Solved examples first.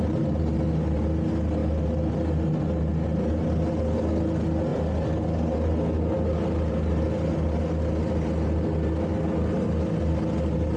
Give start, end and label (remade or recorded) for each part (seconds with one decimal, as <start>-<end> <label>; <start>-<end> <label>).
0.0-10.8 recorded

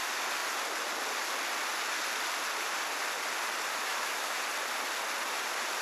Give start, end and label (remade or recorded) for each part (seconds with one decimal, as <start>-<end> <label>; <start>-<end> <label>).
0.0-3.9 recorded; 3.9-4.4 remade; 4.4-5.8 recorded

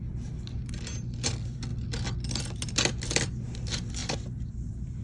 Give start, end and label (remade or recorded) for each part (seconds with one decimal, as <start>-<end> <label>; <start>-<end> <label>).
0.0-4.0 recorded; 4.0-5.0 remade

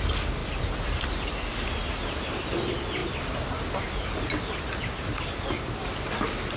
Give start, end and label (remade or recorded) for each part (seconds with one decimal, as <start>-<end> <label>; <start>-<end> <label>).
0.0-0.4 recorded; 0.4-1.5 remade; 1.5-6.6 recorded

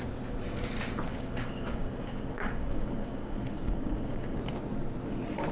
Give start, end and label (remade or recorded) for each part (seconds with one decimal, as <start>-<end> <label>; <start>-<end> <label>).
0.0-1.1 recorded; 1.1-4.4 remade; 4.4-5.5 recorded